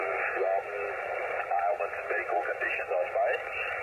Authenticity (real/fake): real